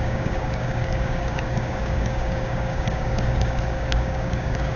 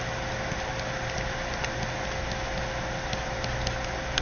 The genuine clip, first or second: second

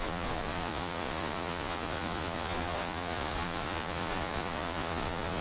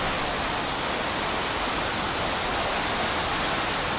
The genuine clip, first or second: second